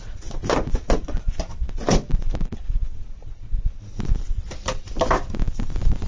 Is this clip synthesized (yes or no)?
yes